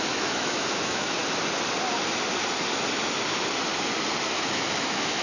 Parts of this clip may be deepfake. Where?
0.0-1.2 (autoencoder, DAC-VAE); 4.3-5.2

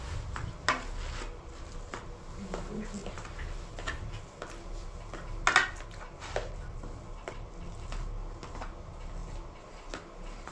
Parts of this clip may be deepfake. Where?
none

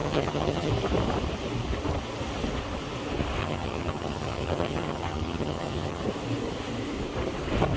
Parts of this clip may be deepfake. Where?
0.0-0.7 (vocoder, HiFi-GAN); 3.4-6.0

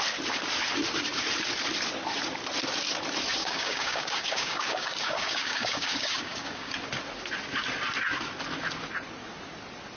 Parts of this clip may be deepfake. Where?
3.4-6.7 (codec, DAC)